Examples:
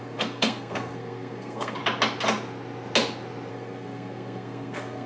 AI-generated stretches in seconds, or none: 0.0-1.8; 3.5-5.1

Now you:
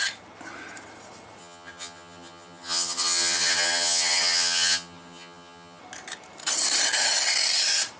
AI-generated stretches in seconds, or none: 1.4-5.8

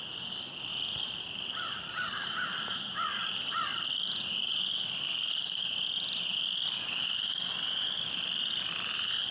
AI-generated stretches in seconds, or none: none